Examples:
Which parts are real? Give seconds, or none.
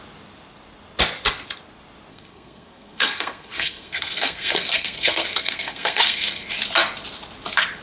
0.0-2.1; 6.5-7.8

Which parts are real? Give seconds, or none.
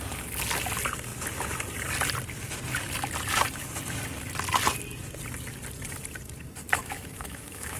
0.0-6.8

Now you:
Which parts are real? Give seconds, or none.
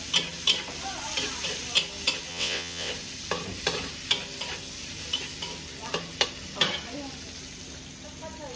0.0-2.3; 2.9-8.6